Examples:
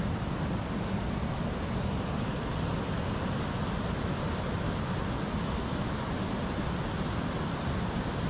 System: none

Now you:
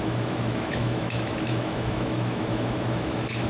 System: autoencoder, DAC-VAE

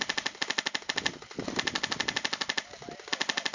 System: none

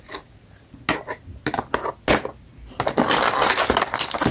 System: none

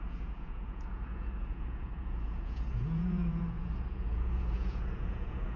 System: vocoder, Vocos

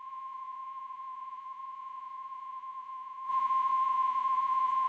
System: vocoder, Vocos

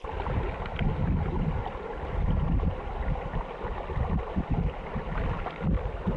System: none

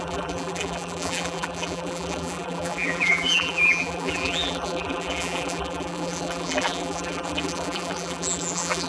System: vocoder, BigVGAN v2